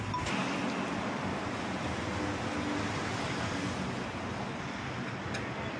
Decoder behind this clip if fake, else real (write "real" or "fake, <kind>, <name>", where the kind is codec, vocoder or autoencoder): real